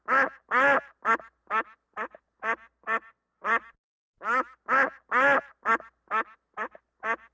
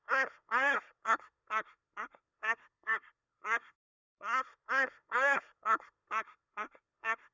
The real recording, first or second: first